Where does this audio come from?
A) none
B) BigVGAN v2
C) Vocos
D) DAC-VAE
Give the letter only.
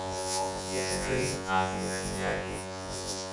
C